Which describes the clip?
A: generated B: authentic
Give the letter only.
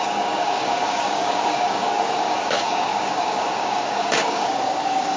A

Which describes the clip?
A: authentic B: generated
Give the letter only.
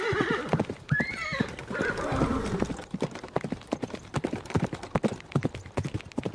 A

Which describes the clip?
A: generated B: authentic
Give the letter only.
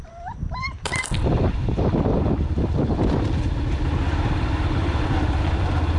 A